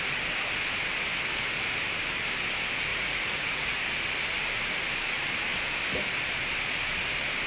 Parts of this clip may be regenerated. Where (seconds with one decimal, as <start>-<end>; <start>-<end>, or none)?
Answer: 2.9-3.8